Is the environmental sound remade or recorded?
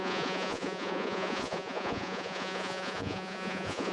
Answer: remade